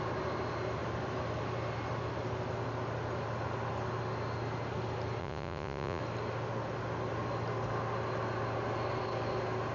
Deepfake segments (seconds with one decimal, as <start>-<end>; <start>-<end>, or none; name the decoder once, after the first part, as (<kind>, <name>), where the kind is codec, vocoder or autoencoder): 5.2-6.0 (vocoder, Vocos)

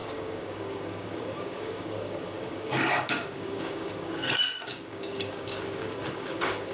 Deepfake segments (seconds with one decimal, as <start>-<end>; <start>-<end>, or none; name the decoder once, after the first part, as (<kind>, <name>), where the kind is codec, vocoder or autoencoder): 0.0-6.7 (codec, DAC)

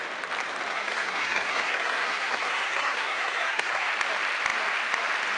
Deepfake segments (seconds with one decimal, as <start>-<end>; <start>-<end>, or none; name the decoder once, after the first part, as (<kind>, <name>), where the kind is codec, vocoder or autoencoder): 0.7-3.9 (codec, SNAC)

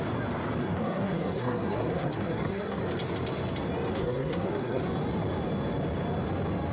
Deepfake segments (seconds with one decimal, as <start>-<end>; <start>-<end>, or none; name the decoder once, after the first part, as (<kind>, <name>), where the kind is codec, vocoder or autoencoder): 0.6-2.8 (codec, SNAC); 3.9-4.8

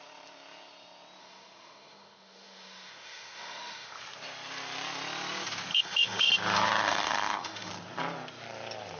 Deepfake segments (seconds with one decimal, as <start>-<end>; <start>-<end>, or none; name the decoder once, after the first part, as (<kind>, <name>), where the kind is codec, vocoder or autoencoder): 1.2-4.0 (autoencoder, DAC-VAE); 5.7-6.3; 6.8-7.7

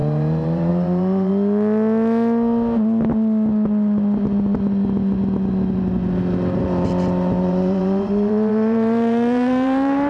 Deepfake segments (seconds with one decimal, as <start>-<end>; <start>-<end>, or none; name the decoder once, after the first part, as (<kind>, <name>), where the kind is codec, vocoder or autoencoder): 0.0-1.3 (vocoder, BigVGAN v2); 6.5-10.1